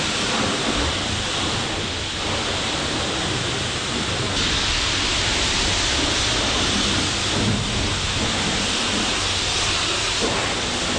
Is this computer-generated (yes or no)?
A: no